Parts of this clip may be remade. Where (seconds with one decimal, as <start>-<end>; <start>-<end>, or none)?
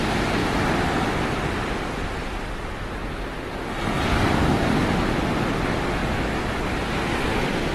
none